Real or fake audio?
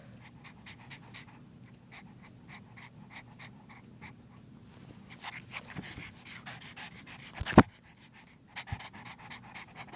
real